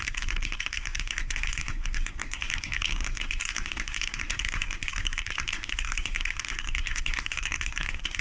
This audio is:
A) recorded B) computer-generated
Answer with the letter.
B